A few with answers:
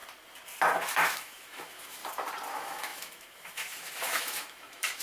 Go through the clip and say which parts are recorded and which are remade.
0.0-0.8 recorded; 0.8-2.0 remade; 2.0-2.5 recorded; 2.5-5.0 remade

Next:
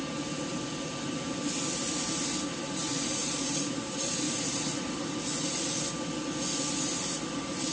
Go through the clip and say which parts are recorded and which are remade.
0.0-3.2 recorded; 3.2-4.6 remade; 4.6-7.7 recorded

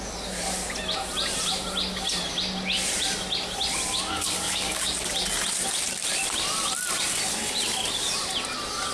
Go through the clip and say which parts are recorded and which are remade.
0.0-3.9 recorded; 3.9-5.1 remade; 5.1-8.9 recorded

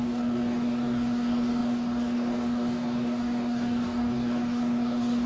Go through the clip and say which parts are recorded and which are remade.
0.0-5.3 remade